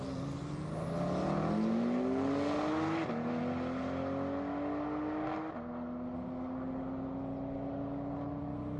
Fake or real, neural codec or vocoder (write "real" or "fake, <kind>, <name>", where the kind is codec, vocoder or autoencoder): real